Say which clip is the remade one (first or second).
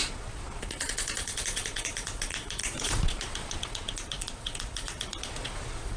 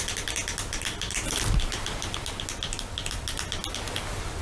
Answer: first